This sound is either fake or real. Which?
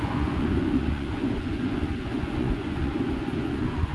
fake